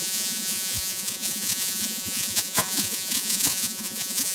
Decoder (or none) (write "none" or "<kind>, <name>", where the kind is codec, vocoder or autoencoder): vocoder, Vocos